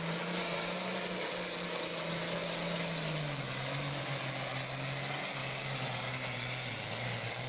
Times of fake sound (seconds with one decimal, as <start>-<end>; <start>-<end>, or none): none